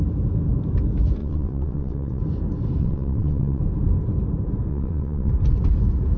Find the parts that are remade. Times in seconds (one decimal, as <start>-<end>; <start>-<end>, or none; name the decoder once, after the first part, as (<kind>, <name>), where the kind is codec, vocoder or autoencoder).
1.2-2.2 (vocoder, WaveNeXt); 2.8-3.6; 4.7-5.3